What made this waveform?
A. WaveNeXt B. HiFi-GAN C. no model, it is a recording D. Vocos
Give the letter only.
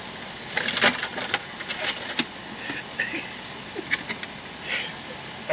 C